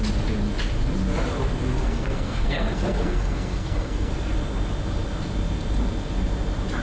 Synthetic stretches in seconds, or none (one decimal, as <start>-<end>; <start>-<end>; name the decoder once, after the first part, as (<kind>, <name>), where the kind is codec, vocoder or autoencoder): 1.8-4.1 (codec, SNAC)